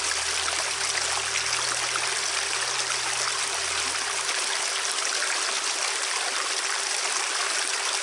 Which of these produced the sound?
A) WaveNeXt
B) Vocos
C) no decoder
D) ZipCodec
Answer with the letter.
C